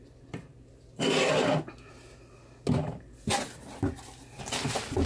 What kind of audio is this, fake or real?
real